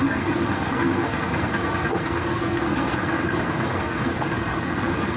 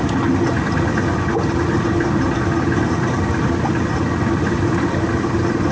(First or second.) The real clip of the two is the second